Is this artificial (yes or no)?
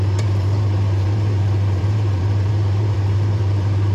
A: yes